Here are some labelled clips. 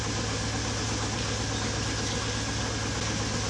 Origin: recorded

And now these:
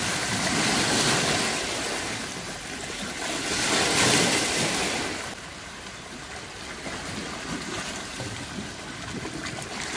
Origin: recorded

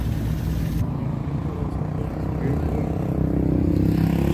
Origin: recorded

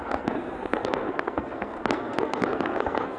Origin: remade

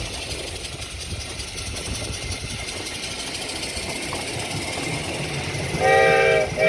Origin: recorded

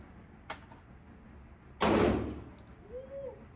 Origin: recorded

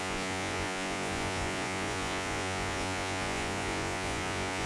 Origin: remade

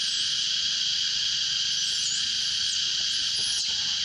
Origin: recorded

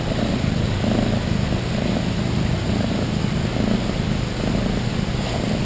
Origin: recorded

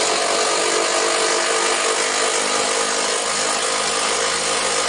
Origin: recorded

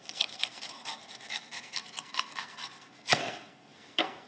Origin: remade